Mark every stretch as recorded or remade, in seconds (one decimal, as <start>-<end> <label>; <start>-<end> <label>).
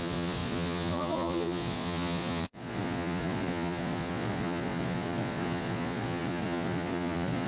0.0-7.5 remade